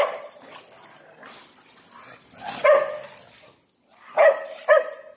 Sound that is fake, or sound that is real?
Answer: real